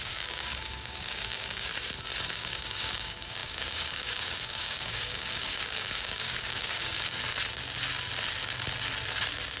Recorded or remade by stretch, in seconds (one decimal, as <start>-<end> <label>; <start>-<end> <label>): 0.0-1.7 remade; 1.7-2.3 recorded; 2.3-7.3 remade; 7.3-9.6 recorded